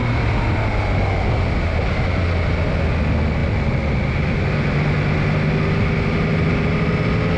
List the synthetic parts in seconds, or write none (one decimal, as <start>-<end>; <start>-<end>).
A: none